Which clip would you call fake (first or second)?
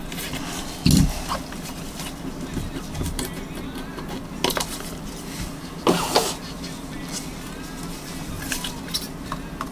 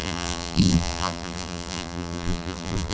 second